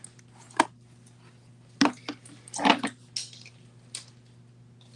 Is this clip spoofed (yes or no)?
no